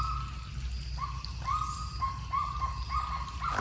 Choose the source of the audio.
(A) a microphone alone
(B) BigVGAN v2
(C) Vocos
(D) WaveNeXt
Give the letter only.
A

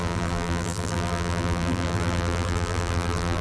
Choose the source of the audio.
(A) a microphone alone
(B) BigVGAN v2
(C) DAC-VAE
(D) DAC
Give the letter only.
B